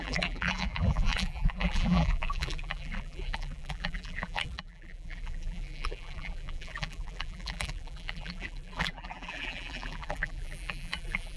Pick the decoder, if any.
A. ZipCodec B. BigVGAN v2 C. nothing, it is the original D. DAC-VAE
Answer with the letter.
B